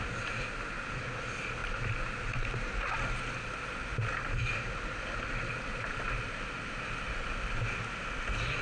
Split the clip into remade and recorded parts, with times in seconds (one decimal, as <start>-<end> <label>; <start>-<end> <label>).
0.0-8.6 recorded